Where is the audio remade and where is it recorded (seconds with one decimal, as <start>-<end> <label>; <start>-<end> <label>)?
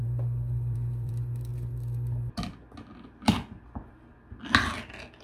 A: 0.0-1.5 remade; 1.5-4.6 recorded; 4.6-5.2 remade